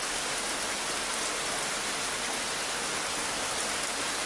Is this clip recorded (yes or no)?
yes